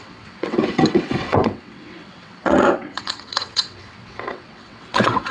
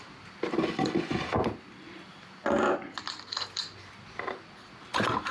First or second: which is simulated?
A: first